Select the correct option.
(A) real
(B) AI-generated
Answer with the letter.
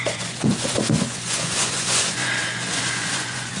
B